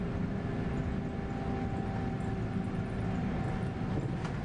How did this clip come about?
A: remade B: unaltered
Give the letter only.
B